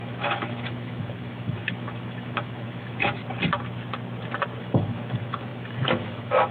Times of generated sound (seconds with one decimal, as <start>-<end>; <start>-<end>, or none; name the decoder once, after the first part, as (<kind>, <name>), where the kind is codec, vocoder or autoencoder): 0.0-3.2 (autoencoder, DAC-VAE); 4.6-6.5